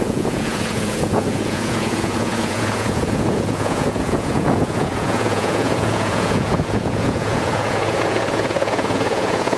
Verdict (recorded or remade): remade